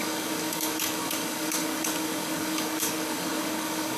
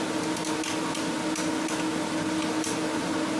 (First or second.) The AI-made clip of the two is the first